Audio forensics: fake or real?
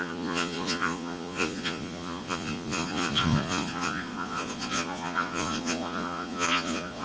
fake